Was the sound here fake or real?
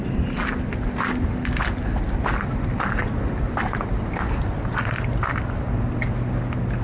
real